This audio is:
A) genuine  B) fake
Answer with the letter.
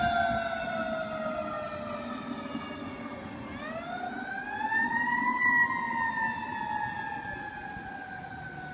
A